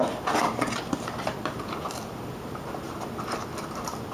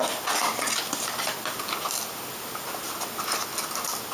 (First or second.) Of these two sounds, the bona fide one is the second